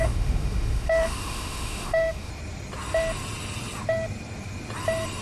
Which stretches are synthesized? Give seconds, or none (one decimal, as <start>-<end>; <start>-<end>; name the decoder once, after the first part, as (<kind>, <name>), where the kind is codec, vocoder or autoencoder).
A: 0.0-2.3 (autoencoder, DAC-VAE)